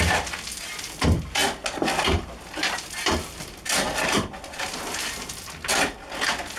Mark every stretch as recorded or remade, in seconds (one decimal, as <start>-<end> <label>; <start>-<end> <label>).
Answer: 0.0-6.6 recorded